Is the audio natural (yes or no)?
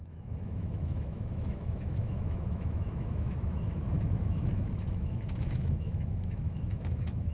no